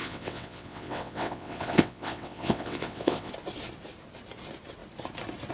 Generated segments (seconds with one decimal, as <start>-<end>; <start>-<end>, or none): 0.0-3.3